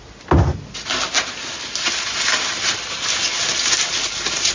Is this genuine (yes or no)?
yes